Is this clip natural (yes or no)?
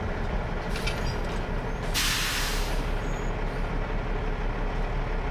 yes